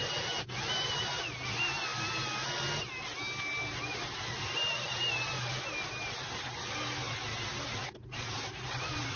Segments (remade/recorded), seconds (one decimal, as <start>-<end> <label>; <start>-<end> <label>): 0.0-9.2 recorded

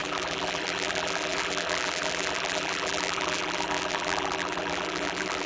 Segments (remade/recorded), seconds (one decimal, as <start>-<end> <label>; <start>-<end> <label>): 0.0-5.5 remade